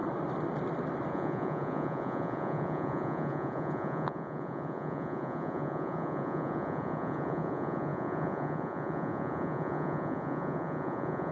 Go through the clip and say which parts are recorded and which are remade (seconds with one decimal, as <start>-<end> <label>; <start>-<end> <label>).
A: 0.0-1.1 recorded; 1.1-11.3 remade